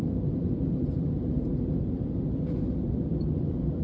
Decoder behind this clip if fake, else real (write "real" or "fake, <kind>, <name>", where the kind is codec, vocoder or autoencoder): real